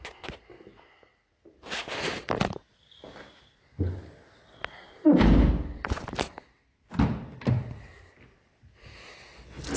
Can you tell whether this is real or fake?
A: real